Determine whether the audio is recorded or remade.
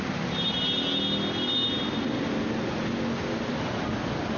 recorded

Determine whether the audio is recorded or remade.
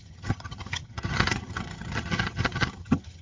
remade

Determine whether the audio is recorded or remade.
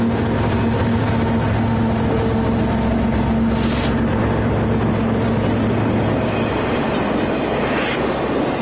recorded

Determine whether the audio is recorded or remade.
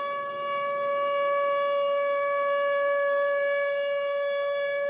recorded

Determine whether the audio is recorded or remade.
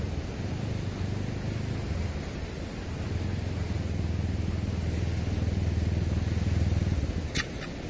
recorded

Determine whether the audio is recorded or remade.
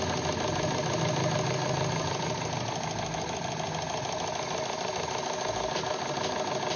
recorded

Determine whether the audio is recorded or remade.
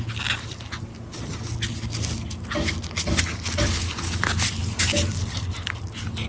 recorded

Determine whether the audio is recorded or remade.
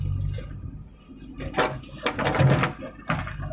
recorded